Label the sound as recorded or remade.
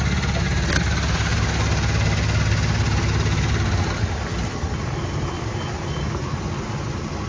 recorded